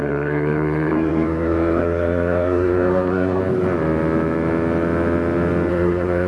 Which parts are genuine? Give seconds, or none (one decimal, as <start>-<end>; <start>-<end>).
3.4-5.7